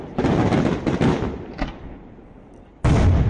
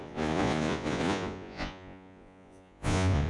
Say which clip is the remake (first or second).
second